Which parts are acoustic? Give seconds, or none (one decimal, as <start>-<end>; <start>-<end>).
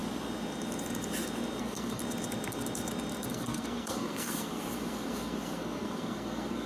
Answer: 0.0-1.6; 2.0-3.3